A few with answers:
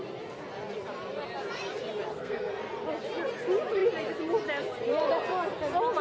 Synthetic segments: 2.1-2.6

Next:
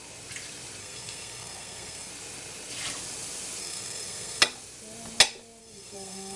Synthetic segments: 0.8-2.1; 3.6-4.4; 5.6-6.4

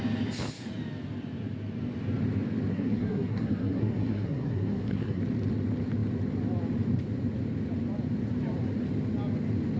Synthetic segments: 2.7-5.2

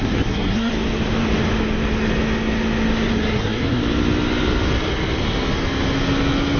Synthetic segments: 0.0-0.7; 3.1-3.8

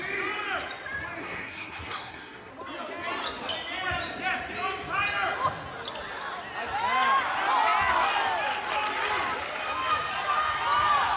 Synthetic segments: 1.2-2.5